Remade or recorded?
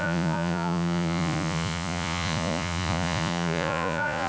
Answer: remade